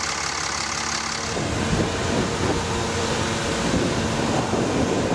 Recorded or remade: recorded